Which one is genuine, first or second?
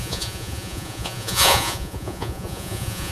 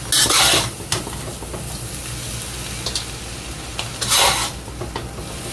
second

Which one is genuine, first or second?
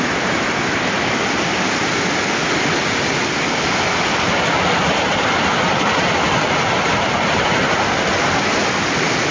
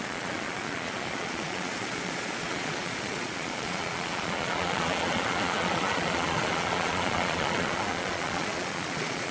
first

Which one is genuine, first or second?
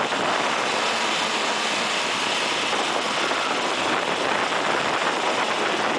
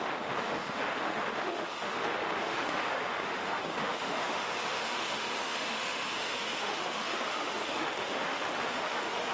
first